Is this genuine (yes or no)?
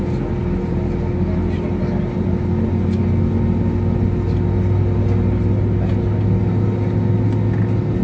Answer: yes